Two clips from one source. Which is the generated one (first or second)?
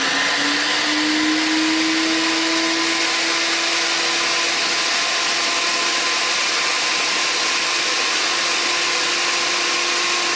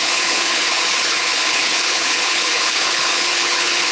second